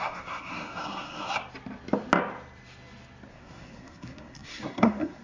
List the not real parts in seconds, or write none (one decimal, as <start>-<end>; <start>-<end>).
0.0-1.4; 3.3-5.2

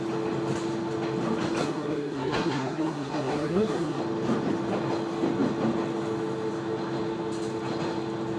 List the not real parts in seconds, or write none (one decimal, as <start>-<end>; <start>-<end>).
1.6-4.0

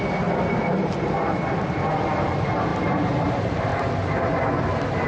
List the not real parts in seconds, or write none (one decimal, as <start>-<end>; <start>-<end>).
0.0-2.7; 3.3-3.7

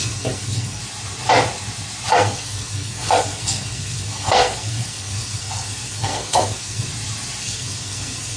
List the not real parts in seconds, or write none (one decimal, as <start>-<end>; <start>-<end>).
0.0-0.8; 2.1-6.9; 7.4-8.4

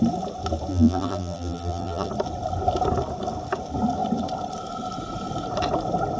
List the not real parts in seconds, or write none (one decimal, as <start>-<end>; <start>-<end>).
0.7-2.1